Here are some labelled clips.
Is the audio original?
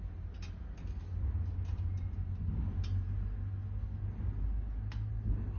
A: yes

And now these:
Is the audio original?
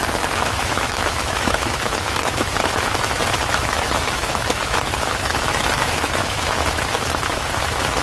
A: no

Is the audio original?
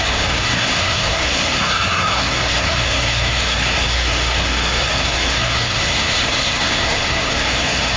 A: no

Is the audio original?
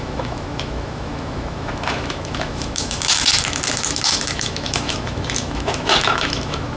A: no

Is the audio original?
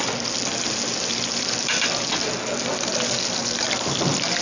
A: yes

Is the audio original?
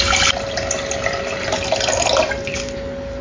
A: yes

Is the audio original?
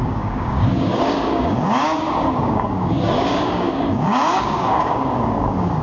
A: no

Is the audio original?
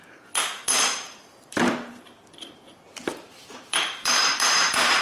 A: no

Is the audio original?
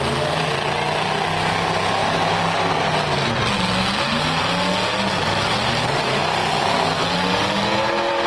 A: yes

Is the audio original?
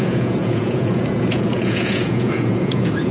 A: no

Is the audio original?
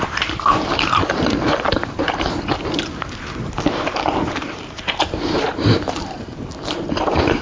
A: no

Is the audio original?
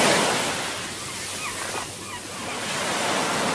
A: yes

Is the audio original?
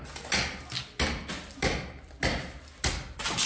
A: yes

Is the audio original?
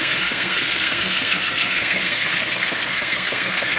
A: no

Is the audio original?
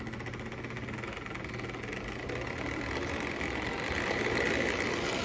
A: yes